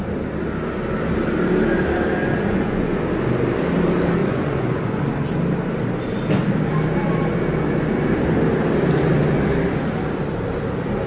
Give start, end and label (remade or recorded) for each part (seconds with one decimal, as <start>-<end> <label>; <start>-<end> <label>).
0.0-2.2 recorded; 2.2-3.0 remade; 3.0-4.2 recorded; 4.2-5.0 remade; 5.0-11.1 recorded